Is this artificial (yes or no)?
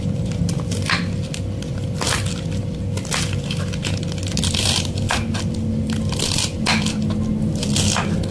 no